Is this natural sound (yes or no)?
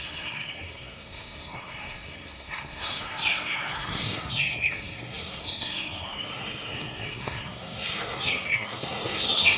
no